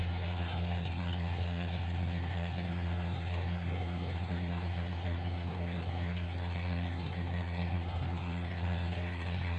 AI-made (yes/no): yes